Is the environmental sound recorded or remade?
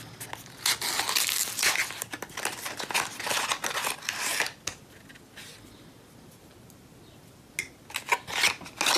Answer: recorded